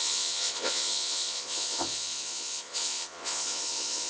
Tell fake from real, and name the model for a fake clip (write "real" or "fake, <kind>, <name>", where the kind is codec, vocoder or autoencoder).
fake, vocoder, Vocos